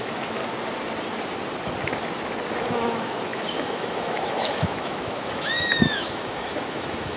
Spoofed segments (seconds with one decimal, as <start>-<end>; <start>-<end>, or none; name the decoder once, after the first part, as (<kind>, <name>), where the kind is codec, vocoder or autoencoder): 0.0-0.4 (autoencoder, DAC-VAE); 2.6-7.2